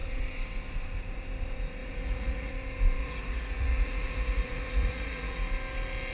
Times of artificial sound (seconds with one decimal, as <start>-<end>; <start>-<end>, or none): 1.8-2.5; 3.0-5.4